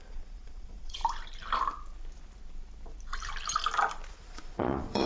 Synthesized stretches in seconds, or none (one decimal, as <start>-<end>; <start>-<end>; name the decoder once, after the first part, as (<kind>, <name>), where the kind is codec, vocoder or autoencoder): 0.0-1.0 (vocoder, Vocos); 4.1-5.1